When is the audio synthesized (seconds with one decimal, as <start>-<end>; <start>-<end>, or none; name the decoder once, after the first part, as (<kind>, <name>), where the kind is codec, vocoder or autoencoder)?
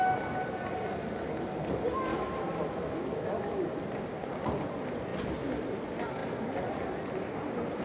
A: 2.1-3.8 (autoencoder, DAC-VAE)